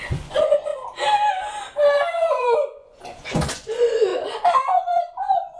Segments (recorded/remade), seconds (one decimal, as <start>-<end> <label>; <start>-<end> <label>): 0.0-0.7 remade; 0.7-2.1 recorded; 2.1-5.6 remade